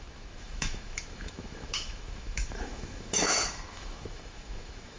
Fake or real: fake